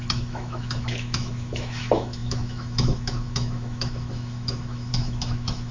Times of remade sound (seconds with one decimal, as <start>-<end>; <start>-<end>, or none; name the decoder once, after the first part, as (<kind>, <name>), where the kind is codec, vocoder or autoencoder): 0.0-5.7 (autoencoder, DAC-VAE)